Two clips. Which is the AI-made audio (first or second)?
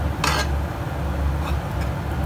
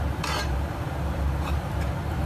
second